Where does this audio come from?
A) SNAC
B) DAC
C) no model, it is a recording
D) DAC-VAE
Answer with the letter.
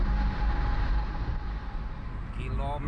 C